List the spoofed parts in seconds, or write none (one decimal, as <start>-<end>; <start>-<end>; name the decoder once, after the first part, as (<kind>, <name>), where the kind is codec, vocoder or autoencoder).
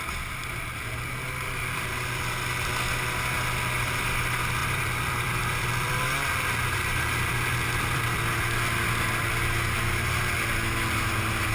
1.6-2.3 (vocoder, BigVGAN v2); 4.6-8.2